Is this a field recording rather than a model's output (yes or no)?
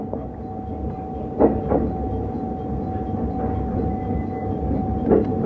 yes